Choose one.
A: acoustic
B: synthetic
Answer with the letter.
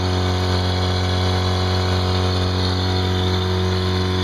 A